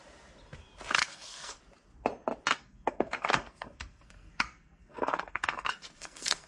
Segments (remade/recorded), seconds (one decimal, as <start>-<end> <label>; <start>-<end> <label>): 0.0-1.0 recorded; 1.0-1.6 remade; 1.6-2.5 recorded; 2.5-6.5 remade